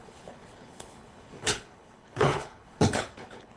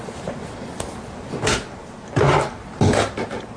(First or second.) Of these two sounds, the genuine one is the second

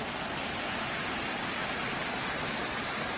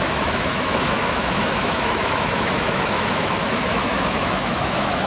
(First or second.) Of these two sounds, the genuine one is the first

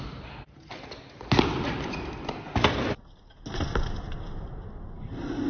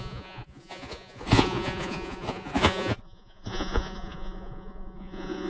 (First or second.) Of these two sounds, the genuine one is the first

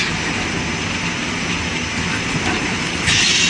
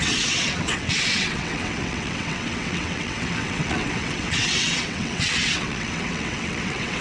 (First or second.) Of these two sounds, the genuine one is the first